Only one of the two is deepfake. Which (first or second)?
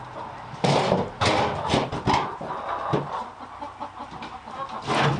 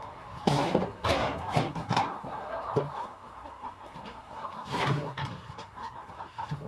second